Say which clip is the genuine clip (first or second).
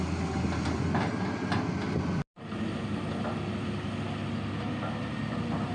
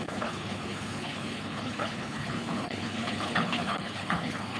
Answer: first